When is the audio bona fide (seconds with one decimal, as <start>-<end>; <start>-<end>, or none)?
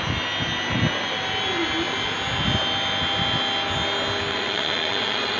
0.0-4.3